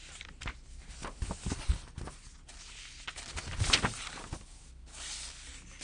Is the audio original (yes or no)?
yes